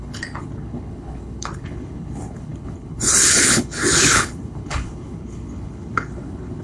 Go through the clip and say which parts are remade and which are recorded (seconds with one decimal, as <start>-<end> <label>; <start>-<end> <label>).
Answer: 0.0-6.6 remade